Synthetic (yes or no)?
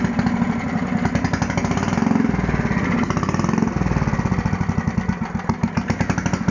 no